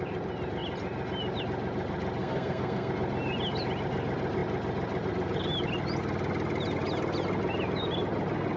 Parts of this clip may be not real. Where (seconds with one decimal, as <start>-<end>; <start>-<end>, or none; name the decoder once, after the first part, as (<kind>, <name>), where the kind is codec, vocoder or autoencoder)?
2.2-2.9 (codec, SNAC)